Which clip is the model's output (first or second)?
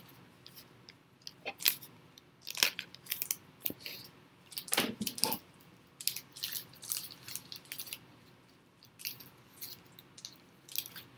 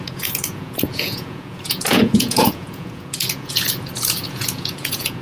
second